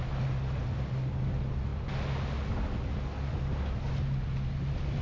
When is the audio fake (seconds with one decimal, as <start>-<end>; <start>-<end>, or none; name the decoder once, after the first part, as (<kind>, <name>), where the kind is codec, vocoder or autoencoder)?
none